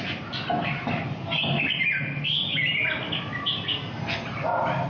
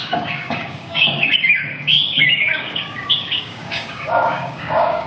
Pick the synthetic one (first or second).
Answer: second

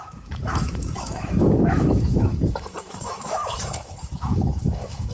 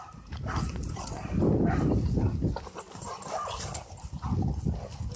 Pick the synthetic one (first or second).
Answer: first